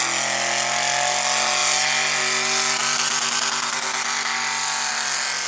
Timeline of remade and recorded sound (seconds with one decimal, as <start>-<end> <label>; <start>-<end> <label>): 0.0-5.5 recorded